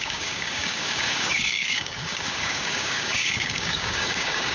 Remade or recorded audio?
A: remade